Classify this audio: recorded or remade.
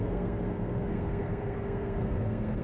remade